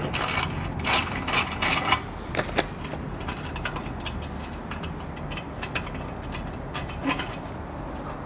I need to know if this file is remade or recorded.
recorded